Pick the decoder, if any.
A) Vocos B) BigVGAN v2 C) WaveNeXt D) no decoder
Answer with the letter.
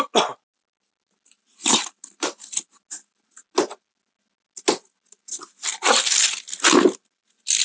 D